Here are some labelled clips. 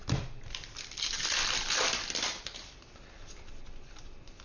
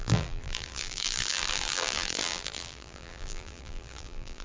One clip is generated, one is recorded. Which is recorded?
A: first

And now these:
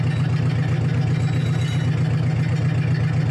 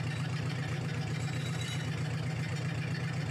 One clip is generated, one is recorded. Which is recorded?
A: first